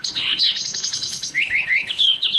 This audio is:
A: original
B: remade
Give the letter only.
B